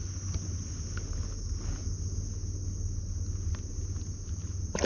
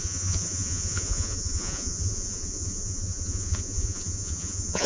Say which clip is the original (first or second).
first